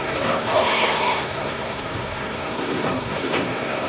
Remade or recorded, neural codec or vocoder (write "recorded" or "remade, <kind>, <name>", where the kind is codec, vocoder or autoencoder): remade, codec, SNAC